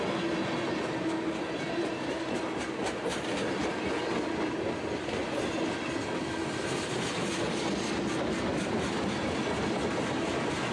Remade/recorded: recorded